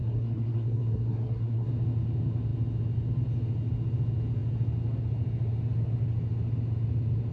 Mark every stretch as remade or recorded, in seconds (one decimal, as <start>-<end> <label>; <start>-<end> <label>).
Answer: 0.0-1.7 remade; 1.7-7.3 recorded